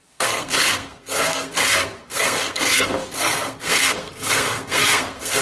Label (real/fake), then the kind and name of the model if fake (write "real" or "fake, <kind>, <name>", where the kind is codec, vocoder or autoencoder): fake, codec, SNAC